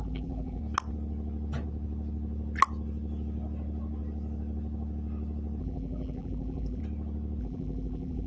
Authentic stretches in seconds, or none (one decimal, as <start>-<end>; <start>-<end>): 0.6-5.6; 6.8-7.4